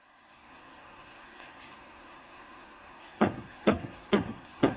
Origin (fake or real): fake